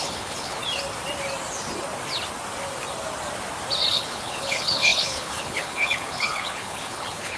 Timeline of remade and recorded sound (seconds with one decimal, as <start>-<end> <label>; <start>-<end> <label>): 0.0-0.6 remade; 0.6-3.9 recorded; 3.9-7.4 remade